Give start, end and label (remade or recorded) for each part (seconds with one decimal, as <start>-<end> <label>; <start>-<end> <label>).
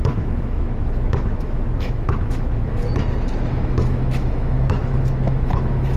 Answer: 0.0-2.8 remade; 2.8-3.5 recorded; 3.5-6.0 remade